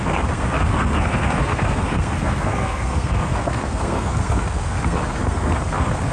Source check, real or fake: fake